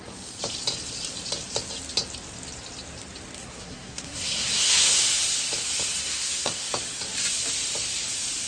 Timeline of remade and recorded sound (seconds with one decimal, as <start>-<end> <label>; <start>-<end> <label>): 0.0-3.4 recorded; 3.4-5.0 remade; 5.0-6.0 recorded; 6.0-6.7 remade; 6.7-8.5 recorded